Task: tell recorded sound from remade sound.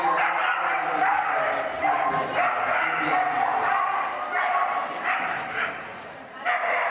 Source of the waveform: recorded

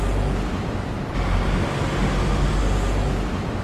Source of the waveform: recorded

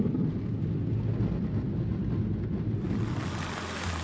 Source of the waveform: recorded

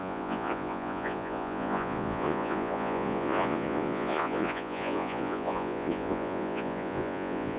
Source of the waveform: remade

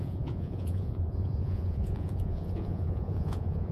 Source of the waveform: remade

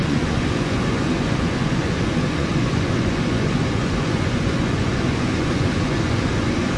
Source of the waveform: remade